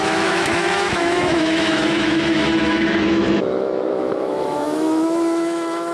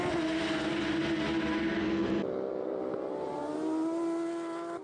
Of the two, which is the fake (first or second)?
first